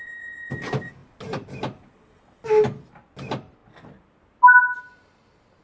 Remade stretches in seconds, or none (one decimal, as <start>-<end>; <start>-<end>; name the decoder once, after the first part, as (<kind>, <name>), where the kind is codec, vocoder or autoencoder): none